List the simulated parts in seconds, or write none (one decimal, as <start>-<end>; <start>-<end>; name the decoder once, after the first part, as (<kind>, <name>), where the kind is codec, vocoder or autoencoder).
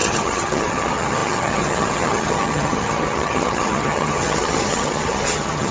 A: 0.0-5.7 (vocoder, HiFi-GAN)